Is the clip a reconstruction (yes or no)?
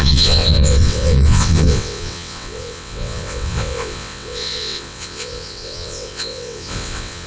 yes